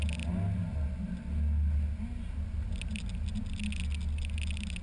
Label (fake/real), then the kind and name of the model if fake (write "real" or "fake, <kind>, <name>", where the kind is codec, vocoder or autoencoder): real